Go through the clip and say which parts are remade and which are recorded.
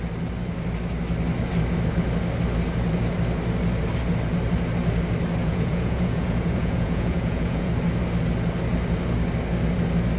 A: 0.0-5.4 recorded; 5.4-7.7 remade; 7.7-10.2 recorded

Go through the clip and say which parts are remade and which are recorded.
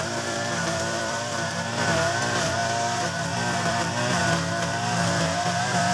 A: 0.0-2.6 remade; 2.6-3.7 recorded; 3.7-4.2 remade; 4.2-5.4 recorded; 5.4-5.9 remade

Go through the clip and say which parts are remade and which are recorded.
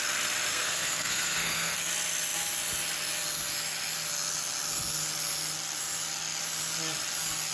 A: 0.0-0.5 recorded; 0.5-1.9 remade; 1.9-7.5 recorded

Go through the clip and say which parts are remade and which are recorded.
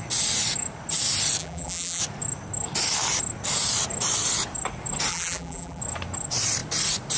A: 0.0-1.4 recorded; 1.4-2.0 remade; 2.0-5.1 recorded; 5.1-5.8 remade; 5.8-7.2 recorded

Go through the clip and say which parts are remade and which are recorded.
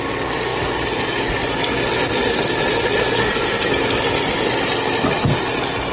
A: 0.0-3.2 recorded; 3.2-3.7 remade; 3.7-5.9 recorded